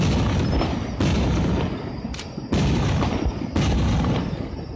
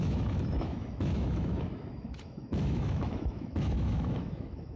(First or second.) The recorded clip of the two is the first